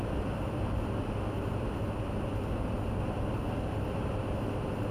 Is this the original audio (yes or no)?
yes